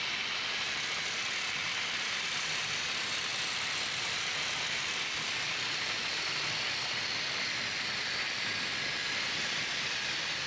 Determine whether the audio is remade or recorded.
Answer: recorded